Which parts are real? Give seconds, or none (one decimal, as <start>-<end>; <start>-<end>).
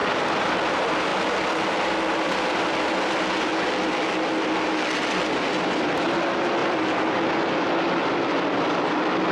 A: 0.0-9.3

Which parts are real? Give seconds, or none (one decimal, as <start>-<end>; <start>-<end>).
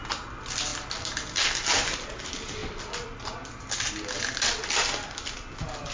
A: 0.0-5.9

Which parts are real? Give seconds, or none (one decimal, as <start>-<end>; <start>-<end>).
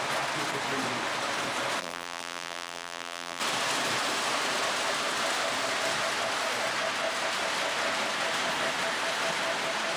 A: 0.0-1.8; 3.4-10.0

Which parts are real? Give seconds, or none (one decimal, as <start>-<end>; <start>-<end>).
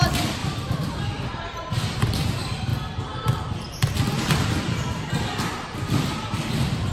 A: 0.0-0.4; 1.7-2.7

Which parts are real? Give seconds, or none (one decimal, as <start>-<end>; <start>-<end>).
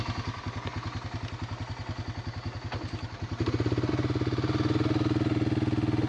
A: 0.0-6.1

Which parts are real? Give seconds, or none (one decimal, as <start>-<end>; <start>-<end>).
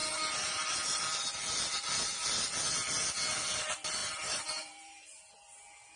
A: 1.0-4.0; 5.0-6.0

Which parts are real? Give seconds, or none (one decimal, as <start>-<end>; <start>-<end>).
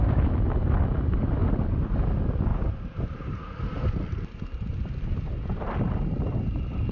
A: 1.4-2.1